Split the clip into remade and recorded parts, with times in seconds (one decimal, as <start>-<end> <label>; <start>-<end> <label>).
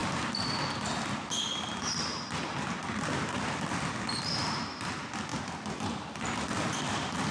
0.0-7.3 recorded